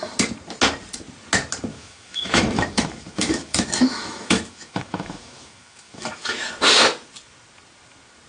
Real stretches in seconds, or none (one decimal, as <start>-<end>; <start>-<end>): 0.0-1.7; 6.5-8.3